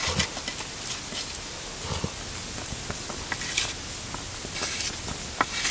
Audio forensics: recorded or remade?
recorded